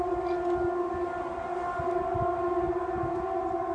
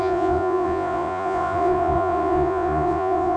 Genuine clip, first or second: first